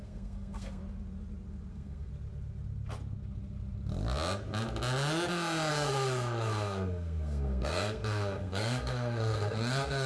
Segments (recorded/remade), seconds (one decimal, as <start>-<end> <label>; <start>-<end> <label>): 0.0-0.8 remade; 0.8-1.7 recorded; 1.7-2.1 remade; 2.1-5.7 recorded; 5.7-10.1 remade